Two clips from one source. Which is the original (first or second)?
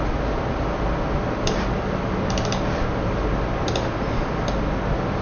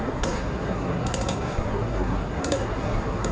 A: first